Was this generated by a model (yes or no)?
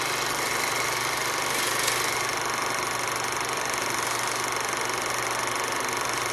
no